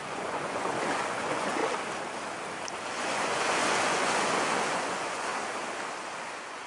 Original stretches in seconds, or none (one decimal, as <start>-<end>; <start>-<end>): 1.6-2.9; 5.3-6.2